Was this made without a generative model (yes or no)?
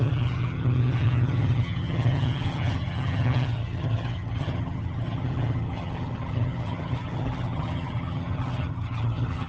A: no